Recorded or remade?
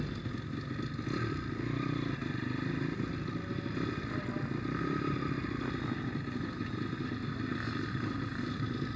recorded